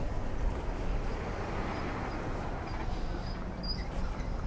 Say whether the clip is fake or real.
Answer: real